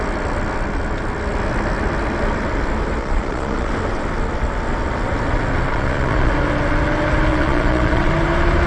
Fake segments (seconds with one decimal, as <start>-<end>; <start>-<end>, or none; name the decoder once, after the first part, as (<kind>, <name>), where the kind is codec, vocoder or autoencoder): 3.0-3.7 (vocoder, Vocos); 5.7-6.3; 7.3-8.1